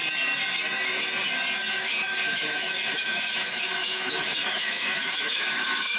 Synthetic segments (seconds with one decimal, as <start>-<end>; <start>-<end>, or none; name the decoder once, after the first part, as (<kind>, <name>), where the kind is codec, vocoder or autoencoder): 1.7-6.0 (autoencoder, DAC-VAE)